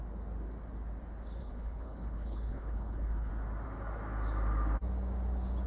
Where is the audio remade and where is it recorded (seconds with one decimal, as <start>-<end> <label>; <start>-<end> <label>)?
0.0-1.4 recorded; 1.4-3.3 remade; 3.3-5.7 recorded